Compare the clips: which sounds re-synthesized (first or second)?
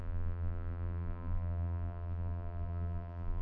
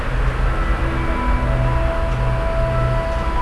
first